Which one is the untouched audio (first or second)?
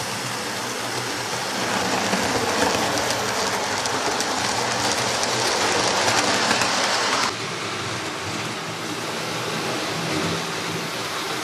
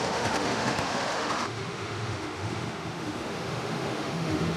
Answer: first